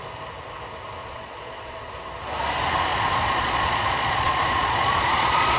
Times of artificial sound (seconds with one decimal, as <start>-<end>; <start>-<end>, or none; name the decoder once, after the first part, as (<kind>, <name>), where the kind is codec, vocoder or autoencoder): 1.0-1.9 (vocoder, Vocos); 2.9-5.6